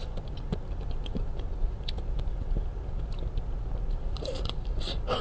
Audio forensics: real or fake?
real